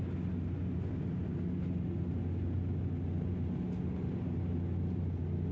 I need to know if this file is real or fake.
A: real